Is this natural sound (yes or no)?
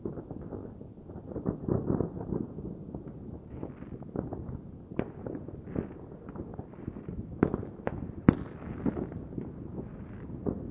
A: yes